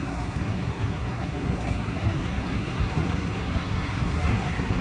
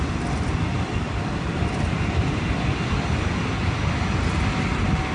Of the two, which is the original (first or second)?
second